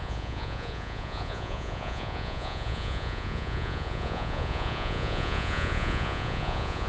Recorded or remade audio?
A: remade